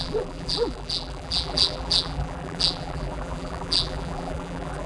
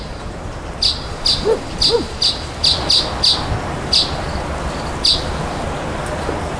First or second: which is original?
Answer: second